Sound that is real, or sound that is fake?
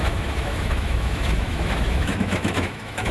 fake